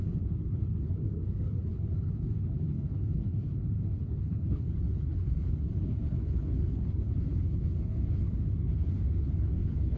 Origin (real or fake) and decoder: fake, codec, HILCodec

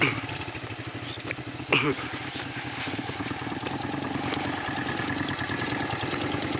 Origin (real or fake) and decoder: real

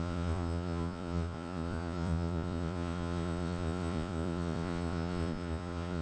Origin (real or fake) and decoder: fake, vocoder, Vocos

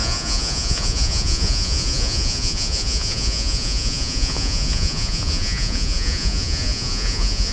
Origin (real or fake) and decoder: fake, vocoder, Vocos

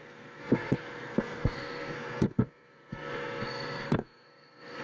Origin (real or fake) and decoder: fake, codec, SNAC